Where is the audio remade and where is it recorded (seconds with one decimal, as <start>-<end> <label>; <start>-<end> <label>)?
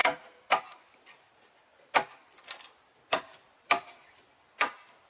0.0-5.1 recorded